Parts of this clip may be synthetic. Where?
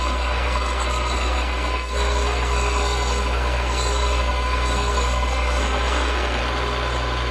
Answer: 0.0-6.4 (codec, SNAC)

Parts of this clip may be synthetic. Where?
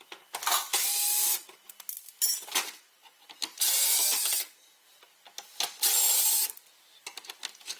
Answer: none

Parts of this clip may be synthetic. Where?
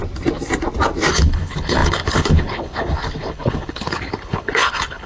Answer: 1.1-5.1 (codec, HILCodec)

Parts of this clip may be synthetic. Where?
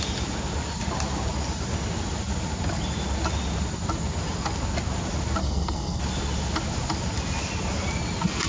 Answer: 5.4-6.0 (codec, SNAC)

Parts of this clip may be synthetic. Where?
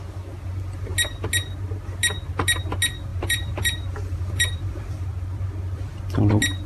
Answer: 3.1-6.0 (vocoder, BigVGAN v2)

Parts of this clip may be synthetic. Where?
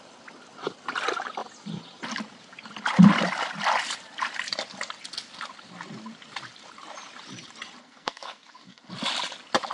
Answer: 7.8-8.9 (codec, SNAC)